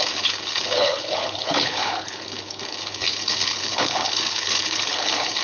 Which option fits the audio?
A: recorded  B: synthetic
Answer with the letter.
B